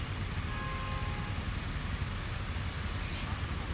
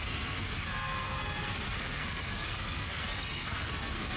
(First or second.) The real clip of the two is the first